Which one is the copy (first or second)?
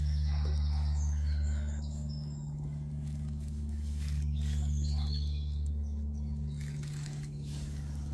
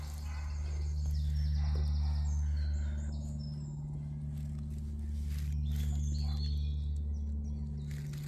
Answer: first